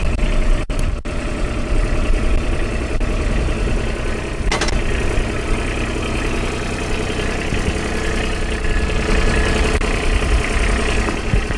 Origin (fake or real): real